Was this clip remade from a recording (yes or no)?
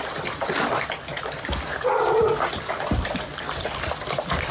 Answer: no